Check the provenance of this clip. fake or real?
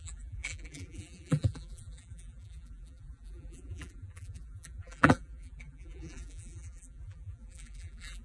fake